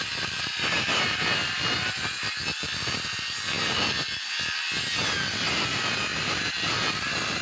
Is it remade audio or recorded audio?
recorded